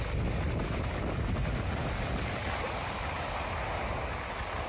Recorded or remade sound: recorded